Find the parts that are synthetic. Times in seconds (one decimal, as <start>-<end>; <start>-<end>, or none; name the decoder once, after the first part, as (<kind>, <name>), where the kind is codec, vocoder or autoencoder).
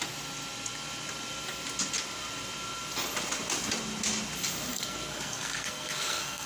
4.7-6.5 (codec, SNAC)